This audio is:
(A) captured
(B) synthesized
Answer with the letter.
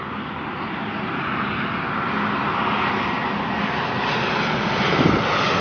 A